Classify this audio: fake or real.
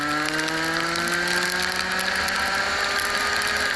real